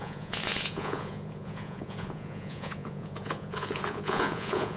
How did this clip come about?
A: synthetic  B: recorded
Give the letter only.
A